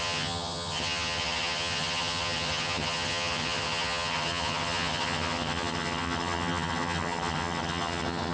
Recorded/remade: remade